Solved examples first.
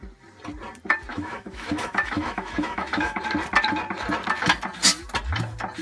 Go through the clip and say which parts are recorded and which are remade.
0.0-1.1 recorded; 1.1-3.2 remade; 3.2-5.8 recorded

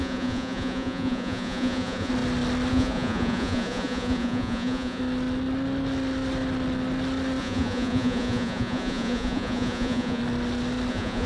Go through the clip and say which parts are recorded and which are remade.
0.0-2.1 remade; 2.1-2.7 recorded; 2.7-5.0 remade; 5.0-7.4 recorded; 7.4-10.2 remade; 10.2-10.9 recorded; 10.9-11.3 remade

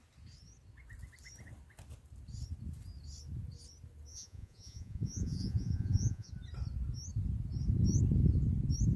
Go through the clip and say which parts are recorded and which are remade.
0.0-4.1 recorded; 4.1-6.3 remade; 6.3-9.0 recorded